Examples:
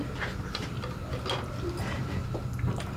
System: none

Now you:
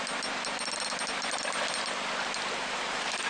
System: none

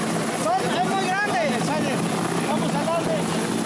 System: none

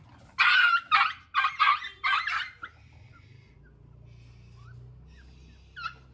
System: none